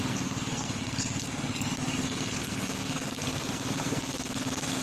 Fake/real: fake